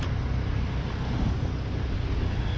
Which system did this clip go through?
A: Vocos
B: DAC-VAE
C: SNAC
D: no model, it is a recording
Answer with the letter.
D